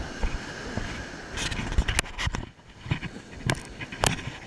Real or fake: real